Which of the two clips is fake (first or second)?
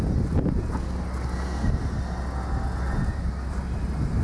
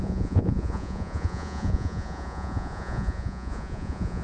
second